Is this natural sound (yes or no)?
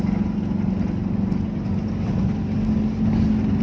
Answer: yes